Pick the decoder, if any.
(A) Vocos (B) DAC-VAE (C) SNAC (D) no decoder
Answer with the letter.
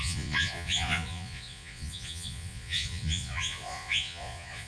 A